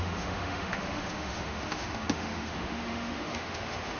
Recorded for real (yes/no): no